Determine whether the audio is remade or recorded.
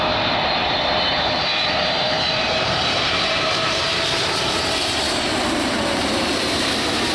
remade